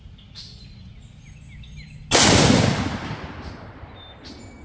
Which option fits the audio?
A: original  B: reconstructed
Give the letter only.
A